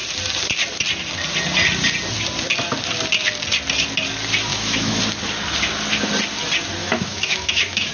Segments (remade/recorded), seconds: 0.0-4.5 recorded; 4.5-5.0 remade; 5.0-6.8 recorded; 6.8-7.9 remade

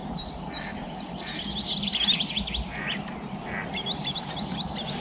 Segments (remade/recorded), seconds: 0.0-5.0 recorded

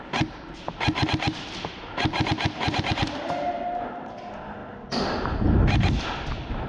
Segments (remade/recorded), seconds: 0.0-6.7 recorded

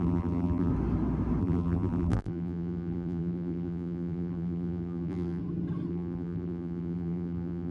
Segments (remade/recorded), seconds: 0.0-0.7 remade; 0.7-1.4 recorded; 1.4-5.4 remade; 5.4-5.9 recorded; 5.9-7.7 remade

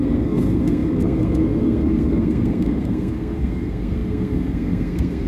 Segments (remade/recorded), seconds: 0.0-5.3 remade